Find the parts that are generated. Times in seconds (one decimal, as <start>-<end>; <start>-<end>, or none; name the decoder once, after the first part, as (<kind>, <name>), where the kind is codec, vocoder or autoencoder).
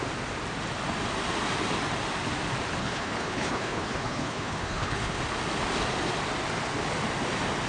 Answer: 2.8-5.2 (codec, HILCodec)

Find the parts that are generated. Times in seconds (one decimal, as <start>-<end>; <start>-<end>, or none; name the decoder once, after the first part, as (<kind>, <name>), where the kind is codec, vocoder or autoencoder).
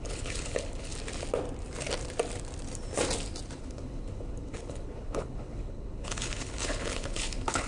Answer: 0.0-0.9 (codec, HILCodec); 3.6-7.7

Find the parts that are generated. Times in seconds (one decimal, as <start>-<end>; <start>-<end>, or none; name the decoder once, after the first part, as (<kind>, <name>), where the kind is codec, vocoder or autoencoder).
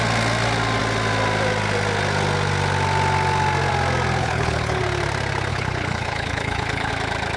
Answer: 4.2-4.8 (codec, HILCodec); 5.5-6.9